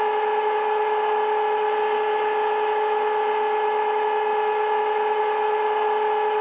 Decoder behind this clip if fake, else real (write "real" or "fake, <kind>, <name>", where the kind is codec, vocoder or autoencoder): real